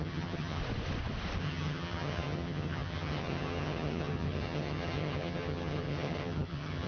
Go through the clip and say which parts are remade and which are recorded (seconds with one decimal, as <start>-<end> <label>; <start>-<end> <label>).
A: 0.0-0.6 remade; 0.6-1.4 recorded; 1.4-6.9 remade